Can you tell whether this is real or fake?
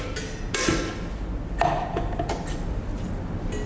real